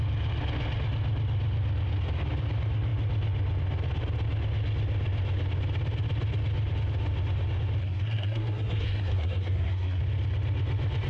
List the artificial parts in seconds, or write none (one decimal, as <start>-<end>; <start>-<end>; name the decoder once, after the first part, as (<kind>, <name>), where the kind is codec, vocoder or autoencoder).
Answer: 7.8-10.0 (codec, SNAC)